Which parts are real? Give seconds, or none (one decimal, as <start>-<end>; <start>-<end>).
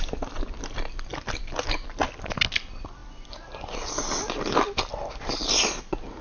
0.0-6.2